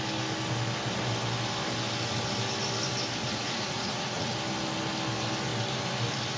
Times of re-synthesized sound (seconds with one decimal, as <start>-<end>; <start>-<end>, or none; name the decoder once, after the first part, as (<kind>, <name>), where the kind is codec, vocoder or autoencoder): 3.2-4.4 (vocoder, Vocos)